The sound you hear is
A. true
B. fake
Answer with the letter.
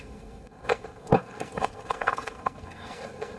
B